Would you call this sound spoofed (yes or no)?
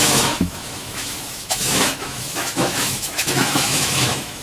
yes